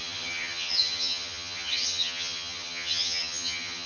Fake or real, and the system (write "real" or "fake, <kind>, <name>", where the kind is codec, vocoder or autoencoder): fake, vocoder, HiFi-GAN